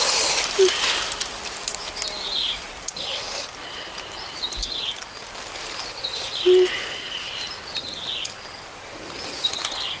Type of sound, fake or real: real